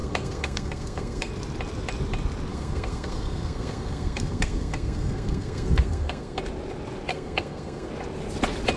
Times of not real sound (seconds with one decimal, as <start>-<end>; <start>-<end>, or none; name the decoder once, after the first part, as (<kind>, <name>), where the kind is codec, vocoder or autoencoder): 0.0-1.3 (codec, SNAC); 2.5-6.4; 7.1-7.9